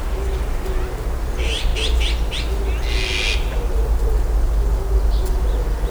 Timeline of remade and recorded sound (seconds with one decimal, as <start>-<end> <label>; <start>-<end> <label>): 0.0-5.9 recorded